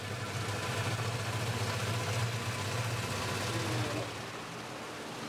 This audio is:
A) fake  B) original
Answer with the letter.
B